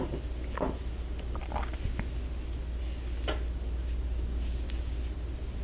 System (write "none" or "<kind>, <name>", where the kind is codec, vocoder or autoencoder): none